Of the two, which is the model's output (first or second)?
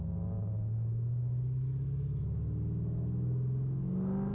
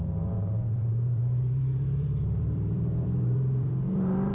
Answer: second